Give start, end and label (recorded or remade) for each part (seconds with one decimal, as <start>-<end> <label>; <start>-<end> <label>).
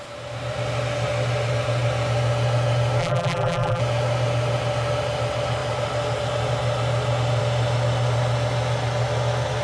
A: 0.0-3.0 recorded; 3.0-3.8 remade; 3.8-9.6 recorded